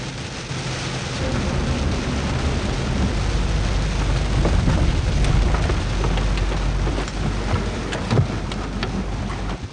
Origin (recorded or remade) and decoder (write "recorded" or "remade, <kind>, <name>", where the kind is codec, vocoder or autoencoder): recorded